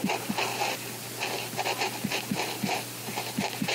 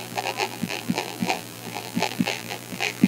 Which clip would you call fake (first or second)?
second